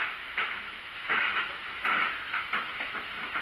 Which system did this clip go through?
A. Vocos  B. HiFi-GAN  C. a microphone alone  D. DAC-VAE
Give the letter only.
D